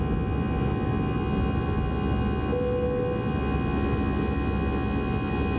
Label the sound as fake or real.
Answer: real